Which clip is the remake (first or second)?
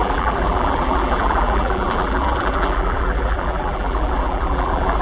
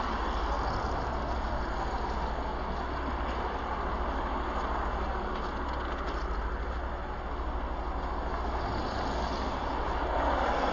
first